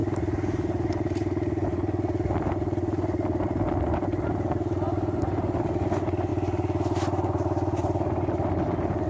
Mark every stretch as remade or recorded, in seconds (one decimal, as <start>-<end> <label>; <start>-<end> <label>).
0.0-9.1 recorded

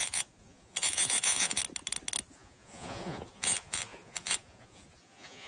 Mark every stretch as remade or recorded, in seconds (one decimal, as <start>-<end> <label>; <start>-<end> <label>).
0.0-1.6 remade; 1.6-2.3 recorded; 2.3-5.5 remade

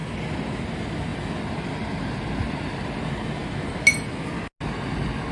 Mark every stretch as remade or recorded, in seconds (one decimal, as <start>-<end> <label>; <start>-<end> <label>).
0.0-5.3 recorded

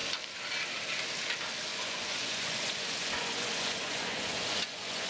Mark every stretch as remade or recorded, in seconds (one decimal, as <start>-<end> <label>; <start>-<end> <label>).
0.0-1.7 recorded; 1.7-5.1 remade

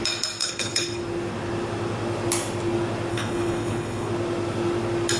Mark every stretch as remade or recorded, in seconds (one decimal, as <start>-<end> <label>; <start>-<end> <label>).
0.0-0.4 recorded; 0.4-1.0 remade; 1.0-3.1 recorded; 3.1-4.1 remade; 4.1-5.2 recorded

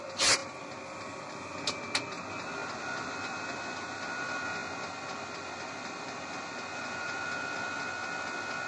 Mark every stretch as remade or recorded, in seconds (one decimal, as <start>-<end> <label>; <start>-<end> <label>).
0.0-6.7 recorded; 6.7-7.2 remade; 7.2-8.7 recorded

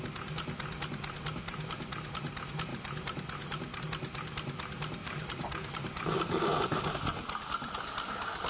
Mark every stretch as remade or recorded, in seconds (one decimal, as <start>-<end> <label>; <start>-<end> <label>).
0.0-2.7 recorded; 2.7-3.8 remade; 3.8-5.0 recorded; 5.0-6.5 remade; 6.5-8.5 recorded